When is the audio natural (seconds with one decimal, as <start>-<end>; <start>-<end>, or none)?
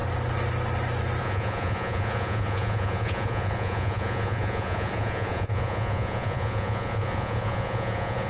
0.0-1.2